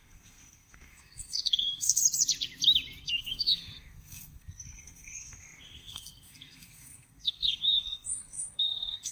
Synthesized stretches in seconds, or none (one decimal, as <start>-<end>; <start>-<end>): 0.0-2.0; 3.0-9.1